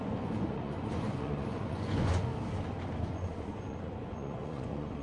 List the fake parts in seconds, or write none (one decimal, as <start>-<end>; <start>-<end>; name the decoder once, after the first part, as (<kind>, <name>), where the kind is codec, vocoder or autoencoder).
0.0-2.3 (vocoder, Vocos); 3.1-5.0